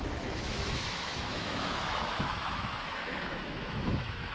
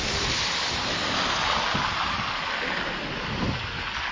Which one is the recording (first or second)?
second